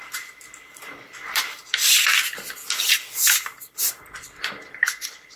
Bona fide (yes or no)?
yes